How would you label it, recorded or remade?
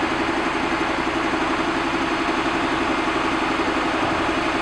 recorded